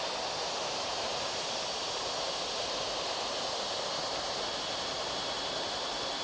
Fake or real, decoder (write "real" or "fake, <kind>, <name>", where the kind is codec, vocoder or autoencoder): real